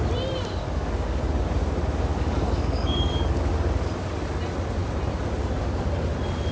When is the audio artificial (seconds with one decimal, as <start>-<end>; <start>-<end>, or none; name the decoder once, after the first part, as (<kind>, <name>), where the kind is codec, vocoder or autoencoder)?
0.6-1.2 (codec, DAC); 2.1-3.5